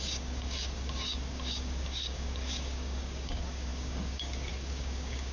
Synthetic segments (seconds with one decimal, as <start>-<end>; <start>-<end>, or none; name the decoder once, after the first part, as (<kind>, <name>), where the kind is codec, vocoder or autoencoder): 0.0-5.3 (codec, DAC)